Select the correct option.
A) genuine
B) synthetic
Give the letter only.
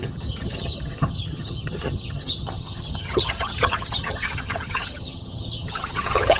B